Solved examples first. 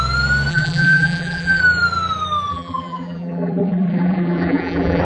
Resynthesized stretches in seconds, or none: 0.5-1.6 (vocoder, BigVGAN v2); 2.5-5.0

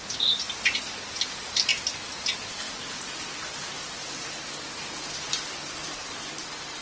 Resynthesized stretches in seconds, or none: none

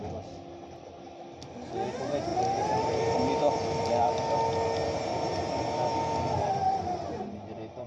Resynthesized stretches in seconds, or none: 2.3-3.9 (vocoder, BigVGAN v2)

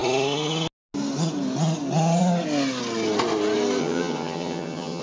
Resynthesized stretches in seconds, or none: 3.8-5.0 (vocoder, HiFi-GAN)

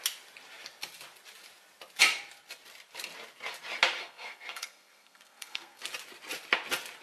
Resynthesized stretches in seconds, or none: 4.0-5.8 (codec, SNAC)

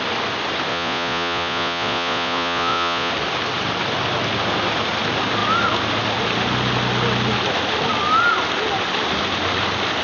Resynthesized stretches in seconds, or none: 0.7-3.1 (vocoder, Vocos)

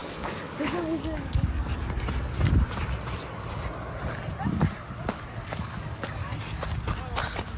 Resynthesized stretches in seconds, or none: 0.0-1.7 (codec, DAC); 5.5-6.2